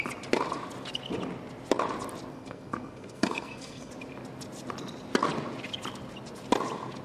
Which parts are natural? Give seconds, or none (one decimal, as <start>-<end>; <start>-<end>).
0.0-2.3; 3.9-7.0